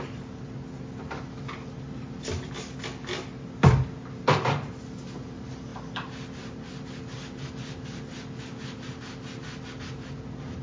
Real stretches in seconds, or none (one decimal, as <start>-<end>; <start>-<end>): 0.0-10.6